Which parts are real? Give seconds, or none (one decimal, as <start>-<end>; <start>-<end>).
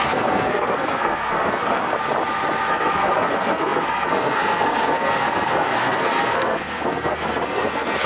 1.9-2.7